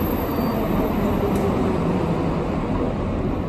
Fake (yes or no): no